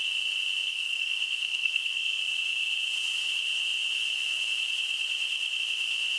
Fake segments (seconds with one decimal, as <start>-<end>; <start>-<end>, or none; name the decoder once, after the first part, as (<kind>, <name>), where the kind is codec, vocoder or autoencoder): 0.7-2.2 (codec, SNAC)